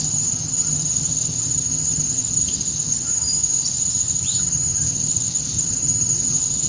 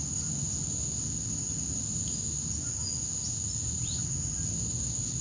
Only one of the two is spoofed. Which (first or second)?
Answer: first